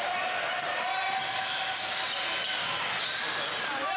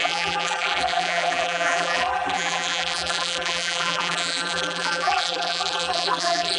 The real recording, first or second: first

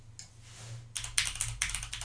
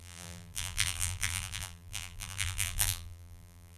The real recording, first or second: first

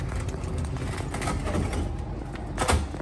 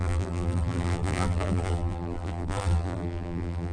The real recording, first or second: first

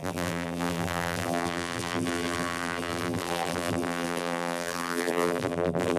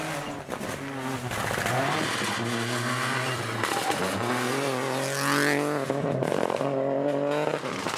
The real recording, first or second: second